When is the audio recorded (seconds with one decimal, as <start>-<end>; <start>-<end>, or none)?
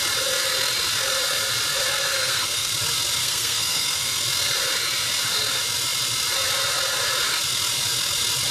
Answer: 0.0-2.1; 2.7-3.2; 4.2-8.5